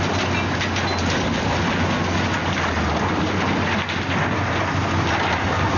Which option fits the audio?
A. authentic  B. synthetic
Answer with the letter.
A